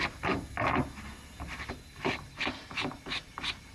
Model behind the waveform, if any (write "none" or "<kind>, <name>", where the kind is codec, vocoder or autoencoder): none